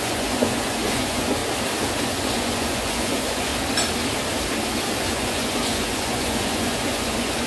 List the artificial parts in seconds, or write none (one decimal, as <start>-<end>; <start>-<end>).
0.0-1.4; 2.0-3.5; 5.0-7.5